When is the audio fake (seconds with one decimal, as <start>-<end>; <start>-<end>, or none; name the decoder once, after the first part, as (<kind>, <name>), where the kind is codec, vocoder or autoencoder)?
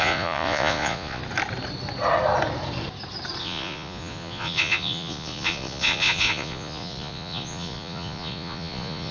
0.0-1.2 (vocoder, Vocos); 3.4-9.1